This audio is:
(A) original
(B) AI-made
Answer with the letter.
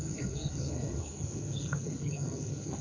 B